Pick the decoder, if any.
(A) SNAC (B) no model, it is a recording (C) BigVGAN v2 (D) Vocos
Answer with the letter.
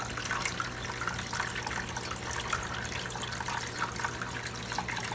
B